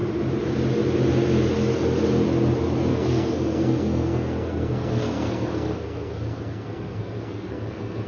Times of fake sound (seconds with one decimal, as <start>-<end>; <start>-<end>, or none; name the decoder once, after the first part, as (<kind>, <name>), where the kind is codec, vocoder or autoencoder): 2.9-8.1 (codec, SNAC)